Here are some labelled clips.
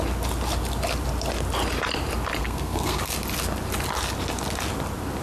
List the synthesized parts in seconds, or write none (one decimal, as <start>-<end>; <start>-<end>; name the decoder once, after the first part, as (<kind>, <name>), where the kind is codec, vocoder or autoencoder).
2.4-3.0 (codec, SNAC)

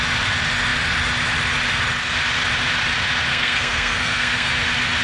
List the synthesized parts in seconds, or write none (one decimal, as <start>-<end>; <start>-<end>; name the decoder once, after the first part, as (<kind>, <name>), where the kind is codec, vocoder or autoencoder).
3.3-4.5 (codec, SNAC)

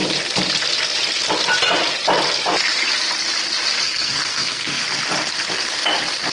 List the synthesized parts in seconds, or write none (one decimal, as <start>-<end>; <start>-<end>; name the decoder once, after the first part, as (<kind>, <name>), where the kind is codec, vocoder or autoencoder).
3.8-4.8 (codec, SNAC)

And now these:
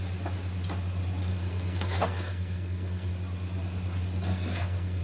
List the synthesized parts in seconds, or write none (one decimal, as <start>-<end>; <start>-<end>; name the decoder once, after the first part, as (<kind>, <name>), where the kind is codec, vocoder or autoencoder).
1.3-3.1 (codec, SNAC); 4.3-5.0